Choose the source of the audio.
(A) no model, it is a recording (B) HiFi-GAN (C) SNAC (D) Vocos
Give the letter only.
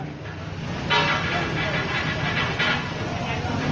A